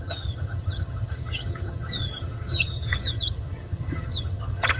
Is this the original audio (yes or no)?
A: no